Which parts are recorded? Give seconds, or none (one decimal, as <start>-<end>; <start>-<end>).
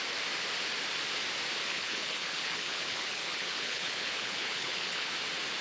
0.0-1.7; 5.1-5.6